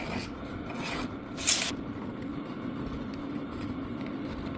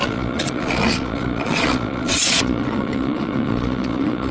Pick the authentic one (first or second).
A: first